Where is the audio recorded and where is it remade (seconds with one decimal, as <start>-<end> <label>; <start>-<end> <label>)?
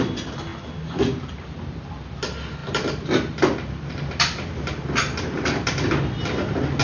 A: 0.0-2.6 recorded; 2.6-6.8 remade